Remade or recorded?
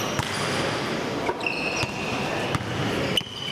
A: recorded